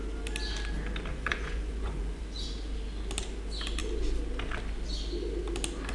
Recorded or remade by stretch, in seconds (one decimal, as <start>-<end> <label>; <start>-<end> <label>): 0.0-1.1 recorded; 1.1-2.2 remade; 2.2-5.9 recorded